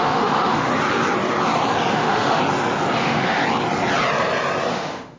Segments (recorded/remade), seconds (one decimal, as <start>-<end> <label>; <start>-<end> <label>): 0.0-0.7 remade; 0.7-1.9 recorded; 1.9-2.4 remade; 2.4-3.0 recorded; 3.0-3.4 remade; 3.4-4.7 recorded; 4.7-5.2 remade